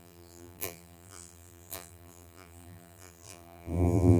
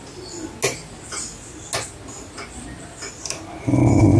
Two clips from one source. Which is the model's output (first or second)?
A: first